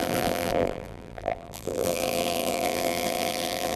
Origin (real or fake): fake